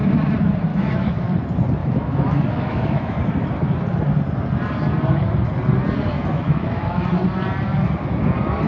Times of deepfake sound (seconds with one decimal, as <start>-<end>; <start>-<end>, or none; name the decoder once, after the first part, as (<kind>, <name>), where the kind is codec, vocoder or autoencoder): 0.7-1.2 (autoencoder, DAC-VAE); 1.8-3.2; 6.1-7.1